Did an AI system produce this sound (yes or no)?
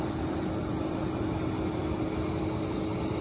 no